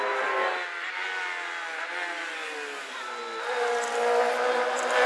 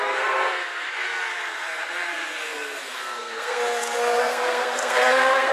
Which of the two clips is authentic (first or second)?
first